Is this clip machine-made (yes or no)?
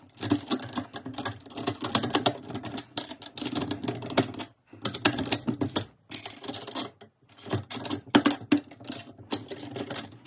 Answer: no